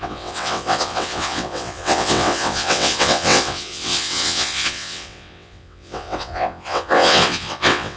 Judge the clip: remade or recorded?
remade